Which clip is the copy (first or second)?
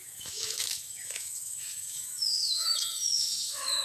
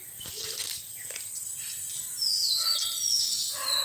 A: first